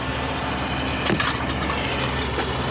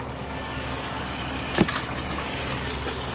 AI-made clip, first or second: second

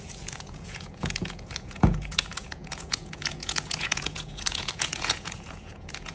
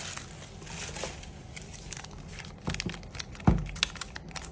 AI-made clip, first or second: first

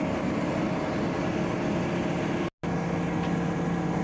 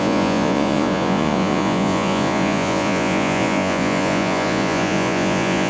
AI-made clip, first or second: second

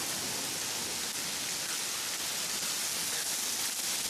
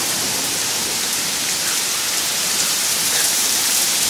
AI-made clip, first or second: second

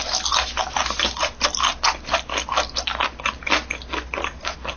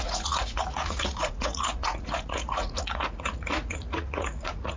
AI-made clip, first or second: second